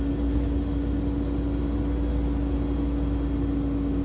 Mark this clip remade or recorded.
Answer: recorded